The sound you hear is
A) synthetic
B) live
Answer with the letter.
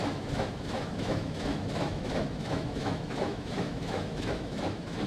A